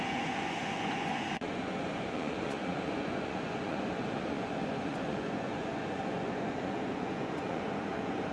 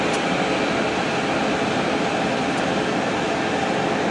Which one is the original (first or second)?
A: second